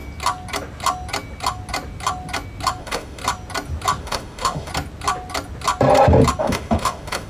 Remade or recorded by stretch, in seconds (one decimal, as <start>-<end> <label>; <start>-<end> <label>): 0.0-2.8 recorded; 2.8-3.2 remade; 3.2-4.0 recorded; 4.0-4.7 remade; 4.7-6.4 recorded; 6.4-7.3 remade